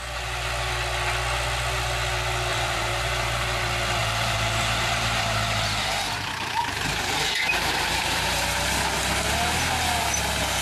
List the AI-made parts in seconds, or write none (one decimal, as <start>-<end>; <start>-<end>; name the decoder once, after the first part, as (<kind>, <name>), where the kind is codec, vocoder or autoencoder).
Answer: 2.5-3.6 (vocoder, BigVGAN v2); 4.0-8.2